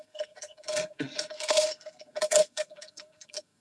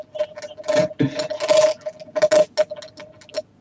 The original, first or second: second